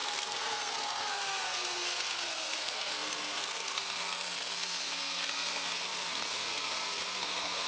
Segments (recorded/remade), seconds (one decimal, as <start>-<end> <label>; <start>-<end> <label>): 0.0-7.7 remade